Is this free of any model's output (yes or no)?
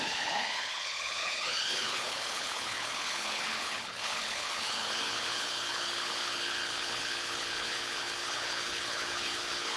no